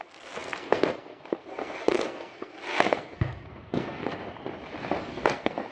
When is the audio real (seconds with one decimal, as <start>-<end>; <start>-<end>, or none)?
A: 4.2-5.0